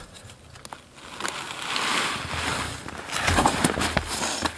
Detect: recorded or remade recorded